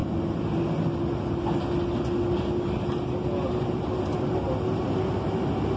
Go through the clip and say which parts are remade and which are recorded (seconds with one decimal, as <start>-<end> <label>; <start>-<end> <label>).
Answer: 0.0-5.8 recorded